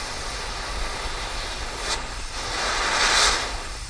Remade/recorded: recorded